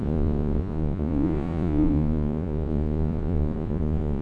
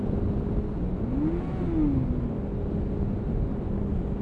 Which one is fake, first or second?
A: first